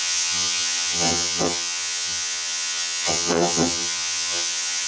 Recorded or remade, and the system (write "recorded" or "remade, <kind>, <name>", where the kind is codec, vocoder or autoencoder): remade, vocoder, HiFi-GAN